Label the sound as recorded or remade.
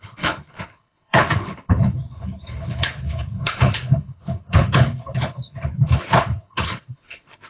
remade